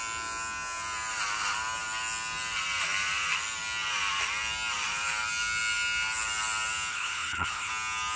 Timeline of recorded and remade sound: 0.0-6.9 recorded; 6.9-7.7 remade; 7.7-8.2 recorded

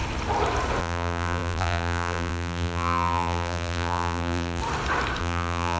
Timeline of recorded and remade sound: 0.0-0.8 recorded; 0.8-4.6 remade; 4.6-5.2 recorded; 5.2-5.8 remade

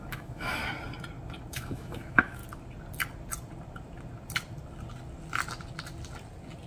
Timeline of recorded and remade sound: 0.0-0.6 remade; 0.6-1.5 recorded; 1.5-2.4 remade; 2.4-6.7 recorded